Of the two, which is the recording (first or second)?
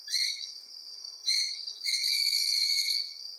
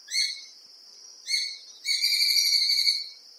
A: second